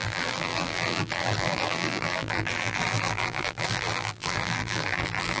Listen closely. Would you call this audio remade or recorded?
remade